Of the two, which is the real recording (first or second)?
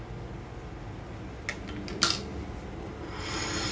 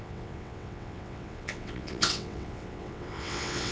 first